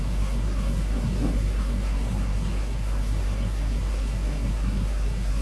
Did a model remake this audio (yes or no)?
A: yes